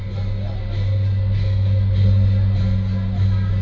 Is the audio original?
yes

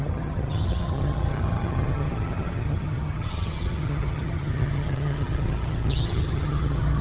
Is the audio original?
no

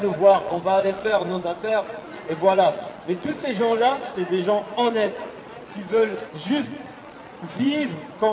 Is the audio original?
no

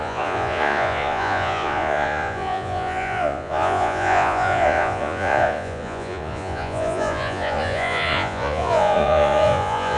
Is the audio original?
no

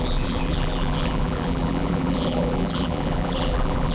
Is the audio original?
no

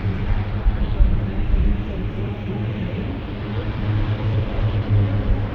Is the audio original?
no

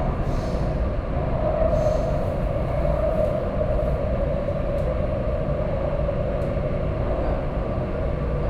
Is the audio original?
yes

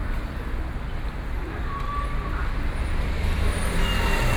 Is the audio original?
yes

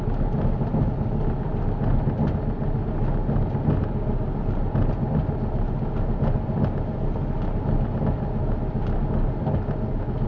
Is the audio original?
yes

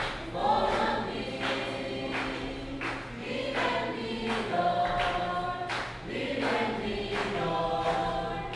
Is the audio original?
yes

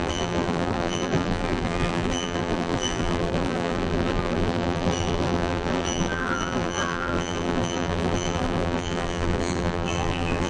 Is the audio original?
no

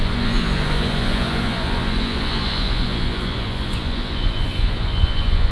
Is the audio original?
no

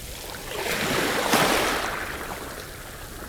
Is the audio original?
yes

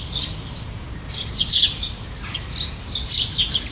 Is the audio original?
yes